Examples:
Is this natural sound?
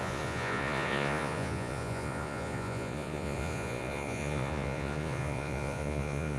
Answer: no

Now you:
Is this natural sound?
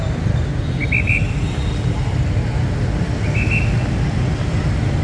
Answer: yes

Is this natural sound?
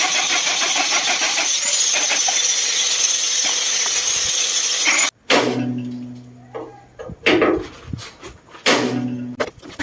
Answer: yes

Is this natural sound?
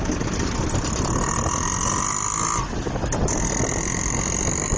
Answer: yes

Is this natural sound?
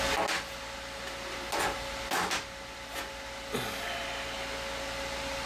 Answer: yes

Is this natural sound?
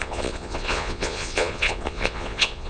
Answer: no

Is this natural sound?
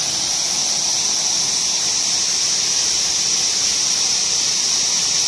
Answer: yes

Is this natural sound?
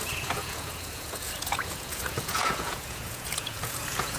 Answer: no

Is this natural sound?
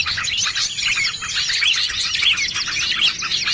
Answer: yes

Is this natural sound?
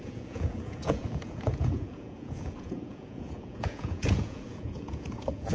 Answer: no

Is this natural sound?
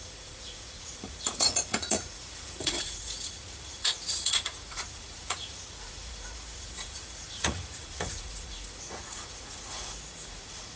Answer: no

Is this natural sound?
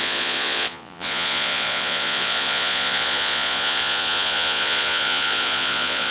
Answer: no